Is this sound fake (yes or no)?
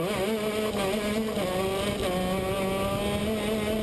no